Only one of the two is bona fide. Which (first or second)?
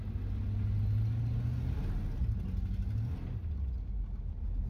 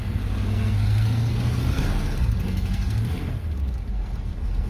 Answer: first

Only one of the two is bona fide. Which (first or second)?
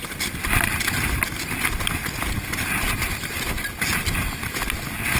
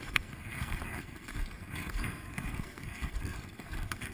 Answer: first